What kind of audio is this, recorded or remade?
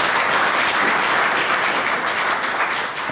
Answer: recorded